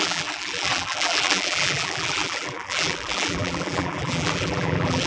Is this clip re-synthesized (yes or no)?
yes